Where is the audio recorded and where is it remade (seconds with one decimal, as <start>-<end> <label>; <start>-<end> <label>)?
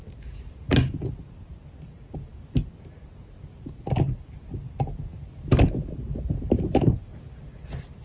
0.0-8.0 recorded